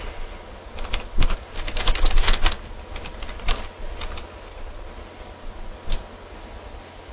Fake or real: real